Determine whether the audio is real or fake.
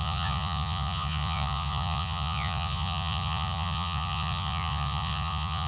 fake